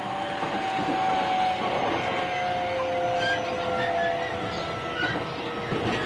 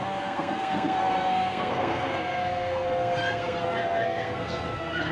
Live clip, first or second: first